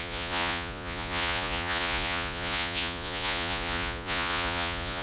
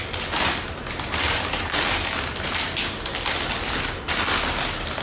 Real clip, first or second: second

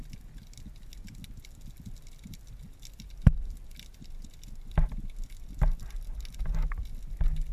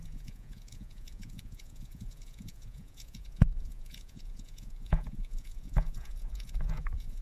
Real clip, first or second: first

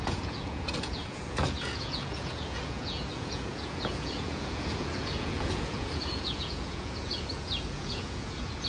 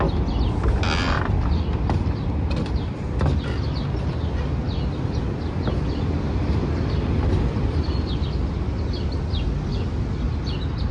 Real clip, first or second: second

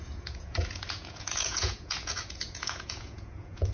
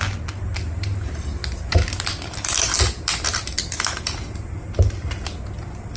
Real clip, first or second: second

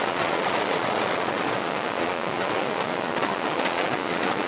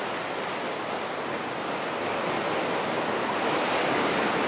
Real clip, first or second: second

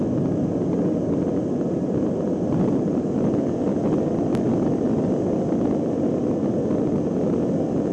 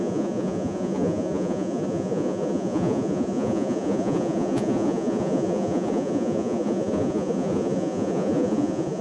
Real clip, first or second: first